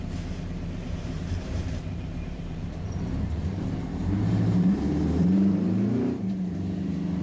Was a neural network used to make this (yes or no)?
yes